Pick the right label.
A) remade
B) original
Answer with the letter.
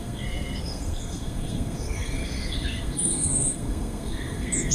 A